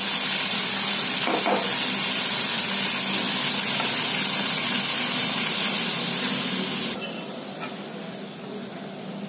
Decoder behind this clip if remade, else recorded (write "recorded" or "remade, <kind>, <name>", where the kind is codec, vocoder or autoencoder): recorded